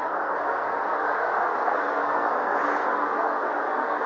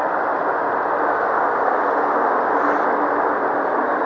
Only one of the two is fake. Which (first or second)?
first